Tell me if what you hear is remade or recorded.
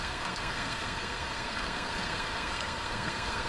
remade